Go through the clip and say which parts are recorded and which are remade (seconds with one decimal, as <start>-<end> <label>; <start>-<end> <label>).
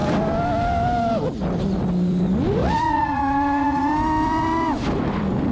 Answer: 0.0-2.6 recorded; 2.6-3.9 remade; 3.9-5.5 recorded